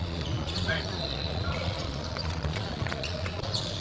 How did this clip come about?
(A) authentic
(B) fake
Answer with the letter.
B